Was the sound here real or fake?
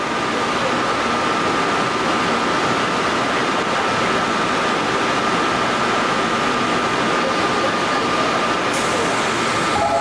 real